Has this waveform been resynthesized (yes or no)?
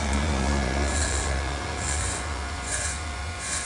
yes